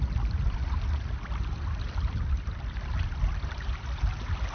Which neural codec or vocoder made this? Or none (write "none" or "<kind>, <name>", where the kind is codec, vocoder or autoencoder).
none